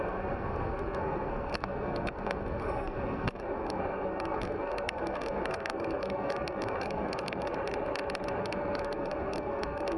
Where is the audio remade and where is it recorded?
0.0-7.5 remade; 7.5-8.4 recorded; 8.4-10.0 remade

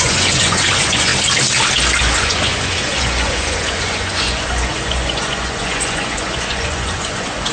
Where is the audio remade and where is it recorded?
0.0-1.1 remade; 1.1-2.0 recorded; 2.0-7.5 remade

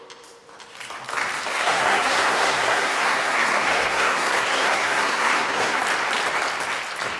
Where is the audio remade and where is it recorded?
0.0-1.5 recorded; 1.5-5.8 remade; 5.8-7.2 recorded

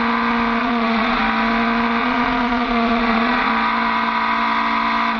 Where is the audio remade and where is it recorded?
0.0-0.6 recorded; 0.6-1.2 remade; 1.2-2.0 recorded; 2.0-3.5 remade; 3.5-5.2 recorded